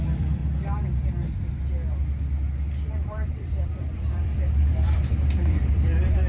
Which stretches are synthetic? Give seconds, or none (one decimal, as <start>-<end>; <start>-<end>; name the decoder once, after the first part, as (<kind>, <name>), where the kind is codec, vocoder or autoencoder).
0.0-0.4 (vocoder, BigVGAN v2); 2.9-6.3